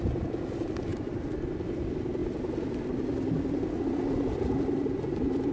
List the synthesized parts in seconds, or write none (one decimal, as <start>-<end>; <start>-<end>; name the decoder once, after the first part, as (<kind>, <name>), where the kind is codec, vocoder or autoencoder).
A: 0.9-1.5 (vocoder, BigVGAN v2)